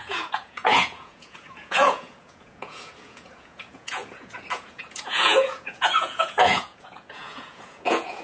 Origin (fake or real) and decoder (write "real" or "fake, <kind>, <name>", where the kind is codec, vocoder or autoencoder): fake, vocoder, Vocos